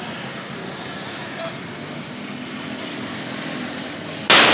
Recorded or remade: recorded